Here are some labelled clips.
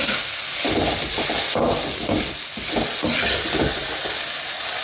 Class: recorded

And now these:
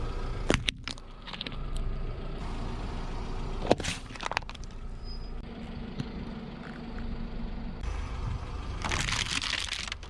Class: remade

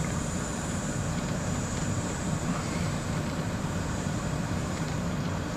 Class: remade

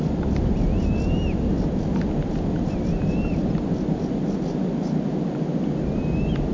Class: recorded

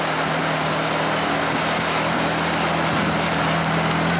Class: recorded